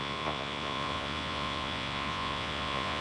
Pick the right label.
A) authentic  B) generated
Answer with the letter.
B